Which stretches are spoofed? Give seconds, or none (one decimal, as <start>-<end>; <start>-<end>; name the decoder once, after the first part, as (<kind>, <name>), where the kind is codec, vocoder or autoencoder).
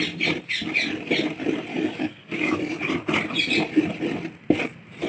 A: 1.7-2.8 (codec, DAC)